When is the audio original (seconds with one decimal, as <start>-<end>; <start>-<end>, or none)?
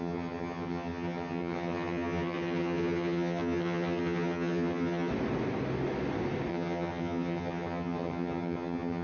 5.1-6.5